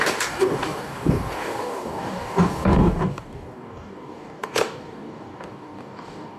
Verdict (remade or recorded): remade